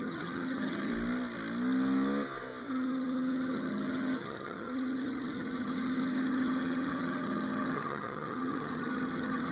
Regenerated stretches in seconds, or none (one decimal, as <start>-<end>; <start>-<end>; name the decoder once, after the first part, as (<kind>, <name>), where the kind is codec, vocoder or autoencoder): 0.0-0.9 (vocoder, HiFi-GAN); 2.7-9.5